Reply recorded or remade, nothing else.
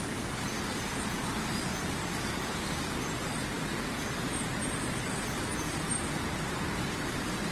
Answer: recorded